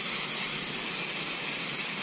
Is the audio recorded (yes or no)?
yes